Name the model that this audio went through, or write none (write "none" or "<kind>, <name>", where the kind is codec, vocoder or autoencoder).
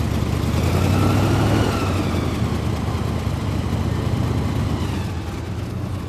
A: none